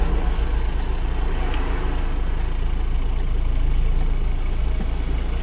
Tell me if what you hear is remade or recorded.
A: recorded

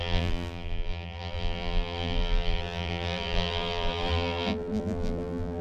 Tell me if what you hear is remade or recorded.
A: remade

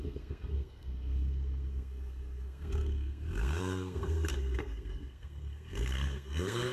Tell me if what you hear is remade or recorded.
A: remade